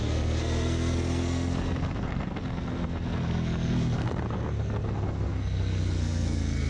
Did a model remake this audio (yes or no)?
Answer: yes